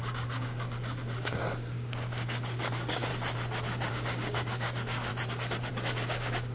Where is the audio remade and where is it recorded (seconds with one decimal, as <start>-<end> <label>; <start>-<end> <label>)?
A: 0.0-3.1 remade; 3.1-3.9 recorded; 3.9-5.1 remade; 5.1-5.7 recorded; 5.7-6.5 remade